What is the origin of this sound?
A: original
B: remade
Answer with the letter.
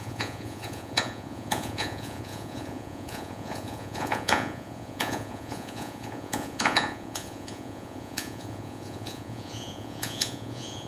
B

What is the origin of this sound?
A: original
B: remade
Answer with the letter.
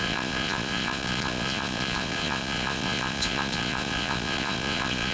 B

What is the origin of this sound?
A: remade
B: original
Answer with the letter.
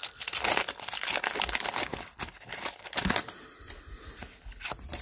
B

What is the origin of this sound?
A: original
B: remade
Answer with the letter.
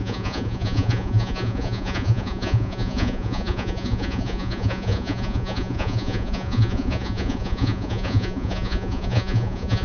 B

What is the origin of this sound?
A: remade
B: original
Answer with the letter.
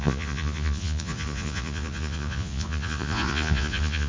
A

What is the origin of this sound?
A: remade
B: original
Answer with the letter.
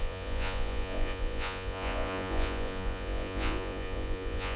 A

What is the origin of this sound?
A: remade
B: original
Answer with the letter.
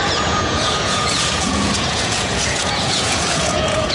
A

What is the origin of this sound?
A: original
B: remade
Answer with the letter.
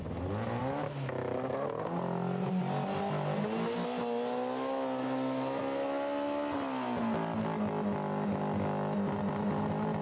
A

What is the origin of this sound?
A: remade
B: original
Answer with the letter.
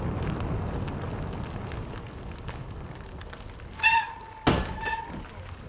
B